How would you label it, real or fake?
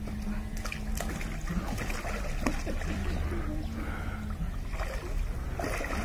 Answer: real